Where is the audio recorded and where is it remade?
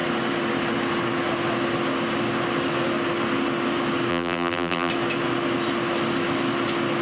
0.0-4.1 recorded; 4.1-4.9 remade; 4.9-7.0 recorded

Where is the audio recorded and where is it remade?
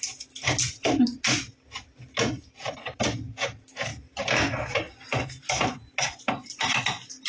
0.0-7.3 recorded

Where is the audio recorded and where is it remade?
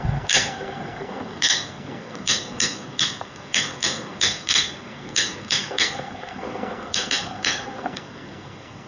0.0-8.9 remade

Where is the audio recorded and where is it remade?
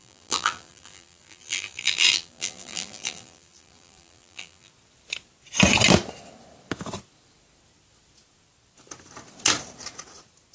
0.0-4.7 remade; 4.7-10.5 recorded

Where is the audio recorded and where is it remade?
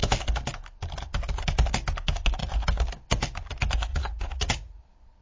0.0-3.9 recorded; 3.9-4.8 remade; 4.8-5.2 recorded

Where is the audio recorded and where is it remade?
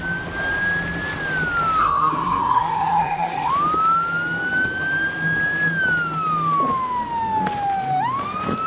0.0-1.8 recorded; 1.8-3.5 remade; 3.5-8.7 recorded